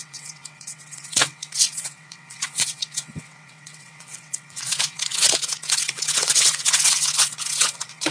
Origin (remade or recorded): remade